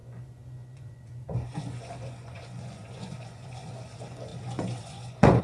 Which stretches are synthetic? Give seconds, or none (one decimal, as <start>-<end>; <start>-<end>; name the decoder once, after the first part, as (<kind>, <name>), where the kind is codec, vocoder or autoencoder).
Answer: 0.0-5.4 (vocoder, Vocos)